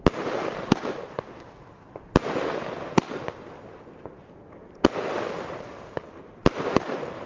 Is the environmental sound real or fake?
real